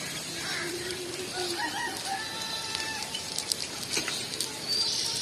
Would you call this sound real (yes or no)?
no